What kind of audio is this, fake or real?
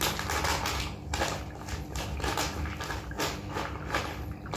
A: real